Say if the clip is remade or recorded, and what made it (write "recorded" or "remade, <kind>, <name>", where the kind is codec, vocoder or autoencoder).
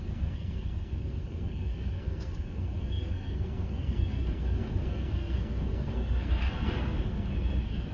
remade, codec, SNAC